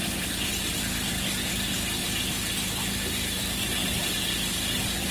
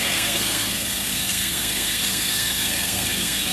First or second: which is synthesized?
second